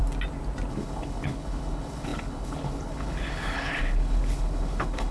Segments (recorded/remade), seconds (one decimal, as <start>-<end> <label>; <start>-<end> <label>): 0.0-0.7 recorded; 0.7-5.1 remade